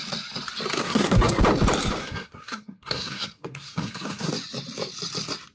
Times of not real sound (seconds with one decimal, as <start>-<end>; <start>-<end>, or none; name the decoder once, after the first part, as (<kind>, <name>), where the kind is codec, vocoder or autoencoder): 0.8-1.4 (codec, SNAC); 2.0-4.3